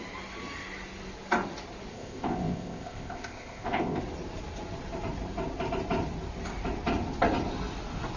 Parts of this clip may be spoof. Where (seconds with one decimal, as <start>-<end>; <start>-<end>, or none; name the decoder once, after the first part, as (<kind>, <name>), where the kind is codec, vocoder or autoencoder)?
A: 1.9-4.0 (codec, ZipCodec)